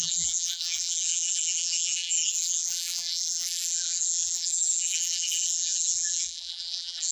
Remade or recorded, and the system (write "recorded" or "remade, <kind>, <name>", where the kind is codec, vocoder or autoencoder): remade, vocoder, BigVGAN v2